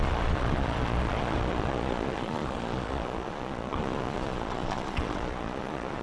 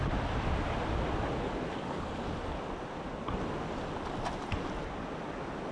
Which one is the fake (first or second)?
first